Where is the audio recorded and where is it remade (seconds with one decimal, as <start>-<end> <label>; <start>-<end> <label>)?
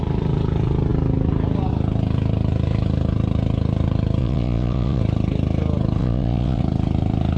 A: 0.0-4.2 recorded; 4.2-5.0 remade; 5.0-6.0 recorded; 6.0-6.6 remade; 6.6-7.4 recorded